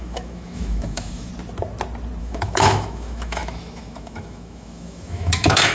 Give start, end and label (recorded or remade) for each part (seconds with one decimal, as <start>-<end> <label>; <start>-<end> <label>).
0.0-1.3 remade; 1.3-2.2 recorded; 2.2-5.7 remade